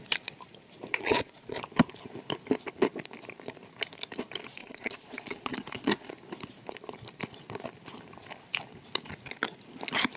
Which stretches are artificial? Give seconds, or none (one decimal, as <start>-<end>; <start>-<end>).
0.9-1.6; 4.6-6.1